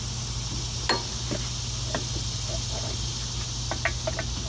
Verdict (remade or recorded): recorded